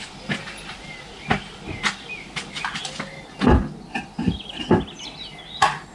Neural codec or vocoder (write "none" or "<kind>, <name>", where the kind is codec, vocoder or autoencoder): none